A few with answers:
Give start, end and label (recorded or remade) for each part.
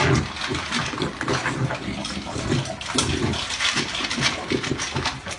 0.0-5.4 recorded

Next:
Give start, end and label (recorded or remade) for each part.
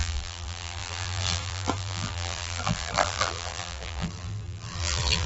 0.0-5.3 remade